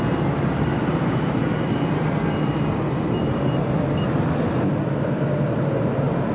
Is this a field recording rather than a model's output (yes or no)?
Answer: yes